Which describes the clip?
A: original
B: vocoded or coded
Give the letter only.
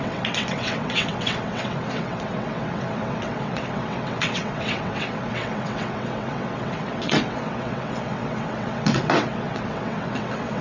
B